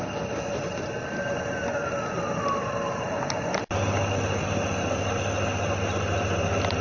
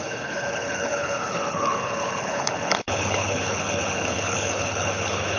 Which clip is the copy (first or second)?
second